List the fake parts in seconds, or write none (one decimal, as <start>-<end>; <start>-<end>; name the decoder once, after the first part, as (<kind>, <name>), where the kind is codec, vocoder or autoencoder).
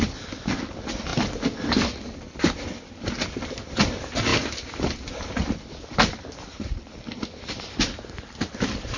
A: 4.3-7.1 (vocoder, BigVGAN v2)